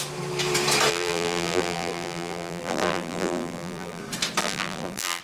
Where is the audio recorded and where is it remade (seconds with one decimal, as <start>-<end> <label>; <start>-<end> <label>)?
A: 0.0-0.9 recorded; 0.9-4.0 remade; 4.0-4.4 recorded; 4.4-5.2 remade